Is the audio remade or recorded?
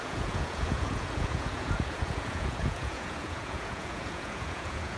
remade